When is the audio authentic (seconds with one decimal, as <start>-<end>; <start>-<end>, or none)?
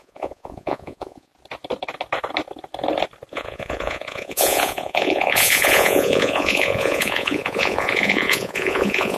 1.3-3.3